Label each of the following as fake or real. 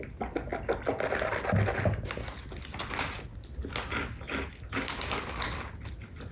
real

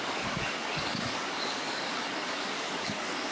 fake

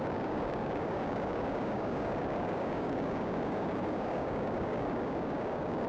fake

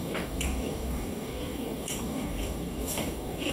fake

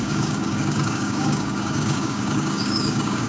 fake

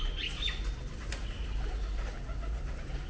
real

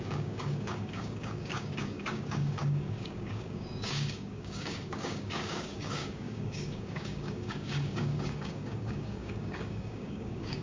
fake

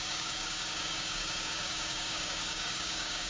fake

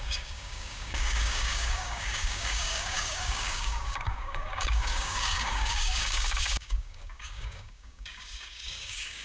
fake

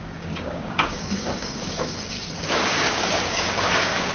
fake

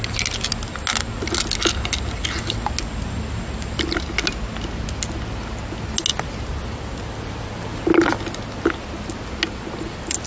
real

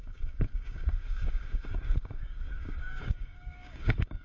fake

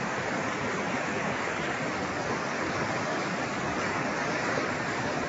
fake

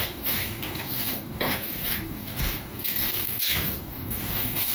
fake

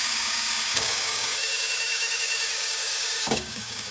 fake